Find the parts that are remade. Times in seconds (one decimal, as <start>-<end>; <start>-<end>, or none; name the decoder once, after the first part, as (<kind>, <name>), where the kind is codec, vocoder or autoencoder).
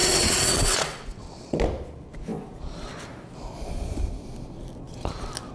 0.0-1.6 (vocoder, WaveNeXt)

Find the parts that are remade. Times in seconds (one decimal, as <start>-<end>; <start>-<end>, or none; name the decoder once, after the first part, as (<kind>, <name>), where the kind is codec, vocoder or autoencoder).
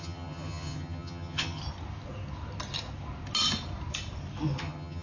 0.0-1.6 (vocoder, HiFi-GAN); 4.6-5.0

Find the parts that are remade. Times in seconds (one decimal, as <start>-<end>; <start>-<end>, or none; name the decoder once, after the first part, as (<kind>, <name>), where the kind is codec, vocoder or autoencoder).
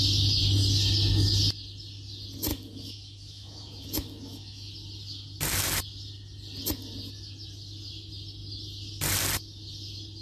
2.5-4.7 (autoencoder, DAC-VAE)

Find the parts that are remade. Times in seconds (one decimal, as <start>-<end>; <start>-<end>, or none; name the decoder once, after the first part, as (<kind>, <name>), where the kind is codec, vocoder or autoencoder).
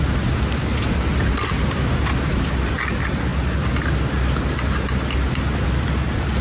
none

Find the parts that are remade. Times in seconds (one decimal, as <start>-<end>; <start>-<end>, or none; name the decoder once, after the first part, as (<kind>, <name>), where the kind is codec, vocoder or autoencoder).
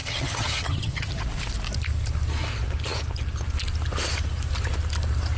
0.0-1.1 (vocoder, HiFi-GAN)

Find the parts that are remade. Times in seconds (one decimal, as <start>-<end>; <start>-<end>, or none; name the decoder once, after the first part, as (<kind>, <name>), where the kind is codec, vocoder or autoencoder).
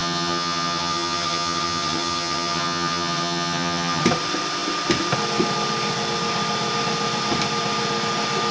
0.0-4.0 (vocoder, HiFi-GAN)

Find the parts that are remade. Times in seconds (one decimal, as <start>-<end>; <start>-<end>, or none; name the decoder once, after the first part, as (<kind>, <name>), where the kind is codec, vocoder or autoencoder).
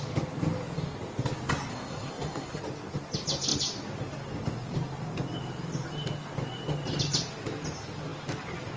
1.7-2.6 (codec, SNAC)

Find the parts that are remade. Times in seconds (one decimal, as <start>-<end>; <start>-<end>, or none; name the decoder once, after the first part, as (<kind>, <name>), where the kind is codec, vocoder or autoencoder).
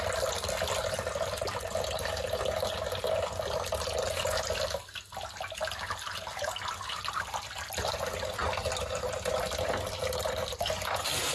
none